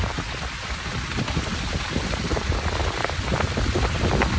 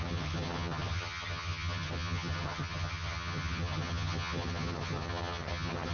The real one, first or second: first